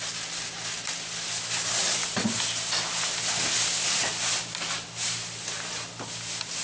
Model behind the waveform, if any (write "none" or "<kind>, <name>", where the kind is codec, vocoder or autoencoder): none